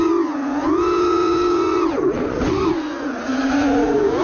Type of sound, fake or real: fake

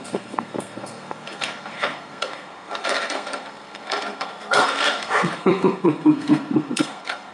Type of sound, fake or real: fake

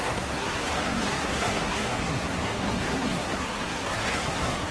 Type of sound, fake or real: fake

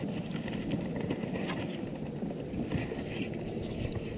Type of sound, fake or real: real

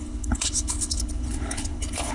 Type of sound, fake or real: fake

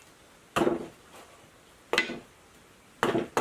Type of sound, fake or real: real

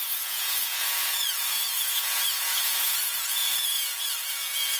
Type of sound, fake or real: fake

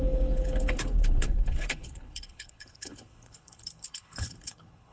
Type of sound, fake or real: fake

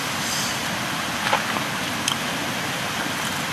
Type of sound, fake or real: real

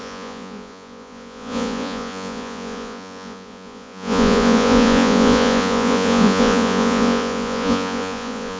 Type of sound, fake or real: fake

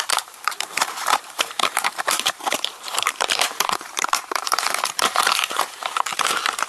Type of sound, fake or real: fake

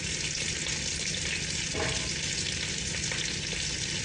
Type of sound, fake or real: real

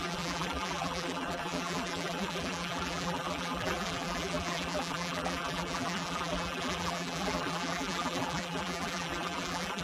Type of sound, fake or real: fake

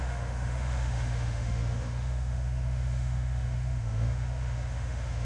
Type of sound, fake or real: fake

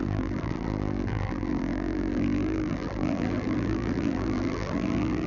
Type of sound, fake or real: fake